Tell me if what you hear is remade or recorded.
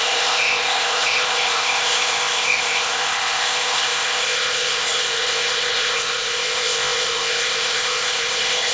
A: remade